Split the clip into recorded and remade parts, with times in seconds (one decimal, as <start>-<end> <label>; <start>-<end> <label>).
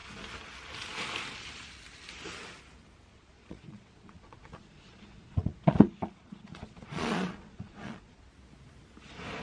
0.0-3.1 recorded; 3.1-8.3 remade; 8.3-9.4 recorded